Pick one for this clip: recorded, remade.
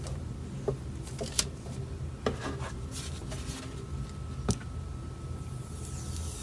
recorded